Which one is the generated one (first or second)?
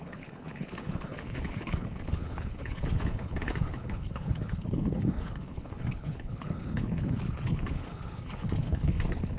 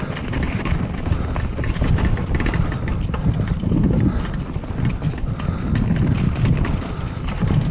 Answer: first